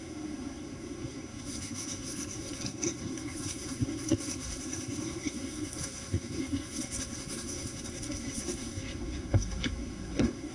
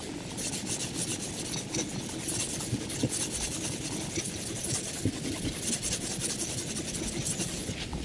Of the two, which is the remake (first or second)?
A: first